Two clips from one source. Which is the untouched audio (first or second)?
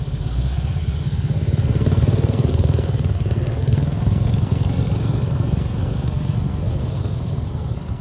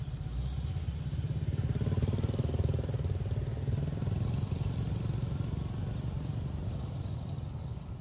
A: second